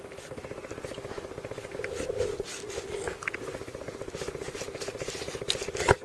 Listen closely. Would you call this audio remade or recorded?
recorded